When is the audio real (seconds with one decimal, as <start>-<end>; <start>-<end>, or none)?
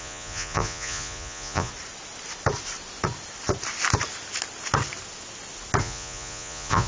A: 1.7-5.8